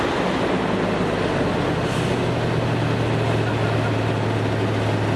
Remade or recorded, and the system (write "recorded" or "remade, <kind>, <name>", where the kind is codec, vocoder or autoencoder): recorded